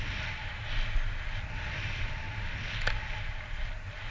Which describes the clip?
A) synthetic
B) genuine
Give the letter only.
B